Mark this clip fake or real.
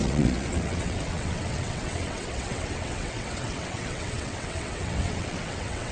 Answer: fake